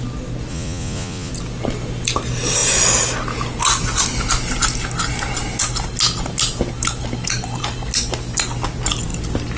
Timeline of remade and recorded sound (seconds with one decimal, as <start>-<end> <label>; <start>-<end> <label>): 0.0-0.5 recorded; 0.5-1.3 remade; 1.3-9.6 recorded